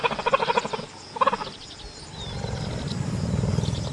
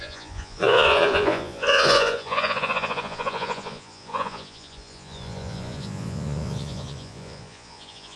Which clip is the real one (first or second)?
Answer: first